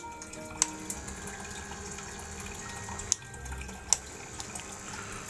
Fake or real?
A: real